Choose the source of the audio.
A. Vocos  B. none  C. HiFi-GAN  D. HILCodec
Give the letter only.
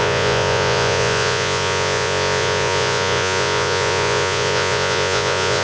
A